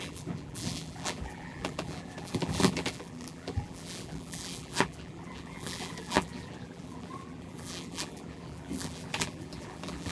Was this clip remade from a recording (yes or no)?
yes